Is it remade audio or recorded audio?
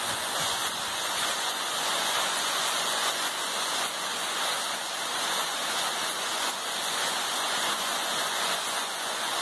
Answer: remade